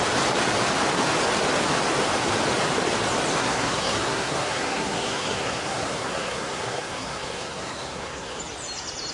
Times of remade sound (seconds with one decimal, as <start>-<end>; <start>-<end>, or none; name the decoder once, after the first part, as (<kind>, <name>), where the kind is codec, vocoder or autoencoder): 3.4-8.4 (codec, SNAC)